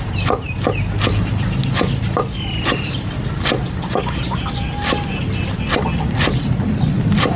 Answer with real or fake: real